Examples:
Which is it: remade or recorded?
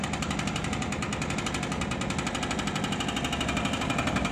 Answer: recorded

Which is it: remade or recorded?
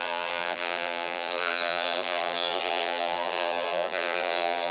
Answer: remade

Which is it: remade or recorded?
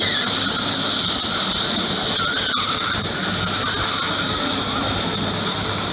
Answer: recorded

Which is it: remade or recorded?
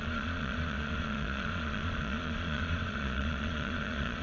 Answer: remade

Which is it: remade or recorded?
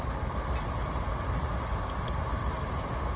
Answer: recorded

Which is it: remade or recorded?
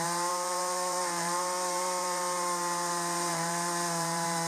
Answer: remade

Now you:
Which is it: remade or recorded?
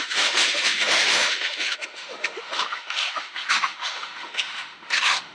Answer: remade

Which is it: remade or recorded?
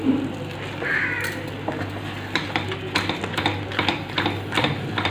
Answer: recorded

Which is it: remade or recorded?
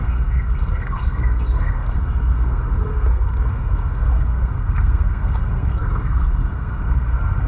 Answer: remade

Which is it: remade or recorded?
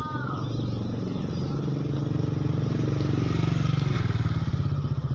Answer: recorded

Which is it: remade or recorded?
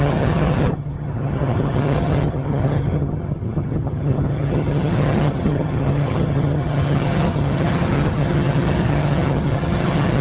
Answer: remade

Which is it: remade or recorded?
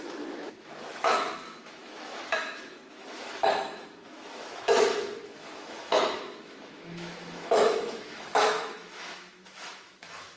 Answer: remade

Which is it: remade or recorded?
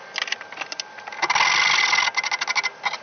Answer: recorded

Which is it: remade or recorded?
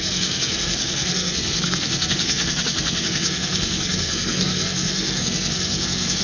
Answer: remade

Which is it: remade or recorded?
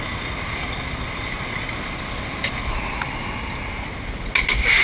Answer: recorded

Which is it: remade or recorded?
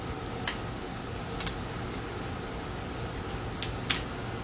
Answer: recorded